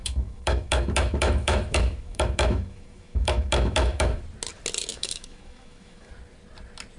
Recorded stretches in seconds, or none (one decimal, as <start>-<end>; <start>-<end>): 4.2-4.9; 6.1-7.0

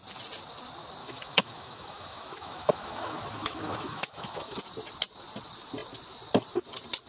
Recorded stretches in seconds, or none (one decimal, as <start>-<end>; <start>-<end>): 0.0-1.0; 4.6-7.1